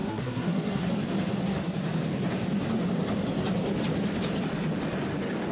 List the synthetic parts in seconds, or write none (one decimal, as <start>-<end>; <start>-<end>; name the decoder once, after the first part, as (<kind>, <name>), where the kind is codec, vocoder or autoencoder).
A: 0.0-0.9 (codec, SNAC)